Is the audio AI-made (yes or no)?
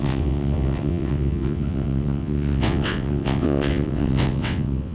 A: yes